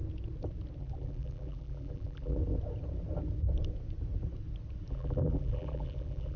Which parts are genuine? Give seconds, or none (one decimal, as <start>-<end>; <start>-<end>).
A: 0.0-0.8; 2.4-4.9